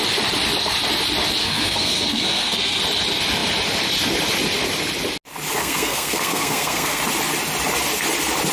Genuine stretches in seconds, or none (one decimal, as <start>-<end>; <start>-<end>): 0.0-1.4; 2.8-5.6; 7.0-8.5